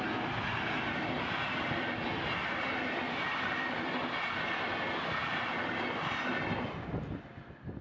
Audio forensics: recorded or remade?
recorded